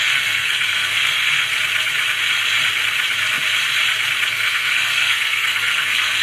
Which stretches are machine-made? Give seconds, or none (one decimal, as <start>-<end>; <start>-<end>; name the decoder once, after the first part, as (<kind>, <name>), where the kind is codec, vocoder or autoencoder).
0.0-1.5 (codec, SNAC); 4.3-6.2